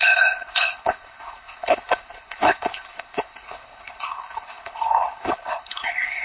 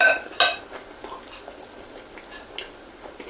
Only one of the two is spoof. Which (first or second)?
first